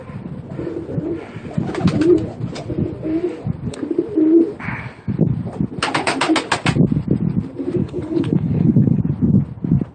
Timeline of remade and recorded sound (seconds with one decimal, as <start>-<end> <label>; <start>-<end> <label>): 0.0-7.8 recorded; 7.8-9.0 remade; 9.0-9.9 recorded